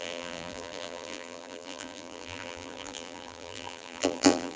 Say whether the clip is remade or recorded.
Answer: remade